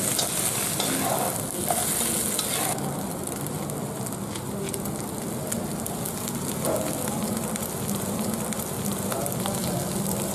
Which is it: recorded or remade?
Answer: recorded